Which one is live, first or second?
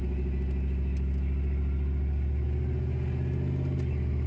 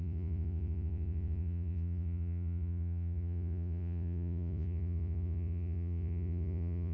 first